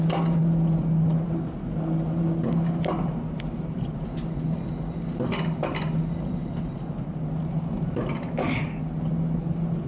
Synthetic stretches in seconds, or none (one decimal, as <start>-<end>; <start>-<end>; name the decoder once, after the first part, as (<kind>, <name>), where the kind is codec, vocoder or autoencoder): none